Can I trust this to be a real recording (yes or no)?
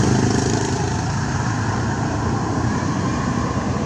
no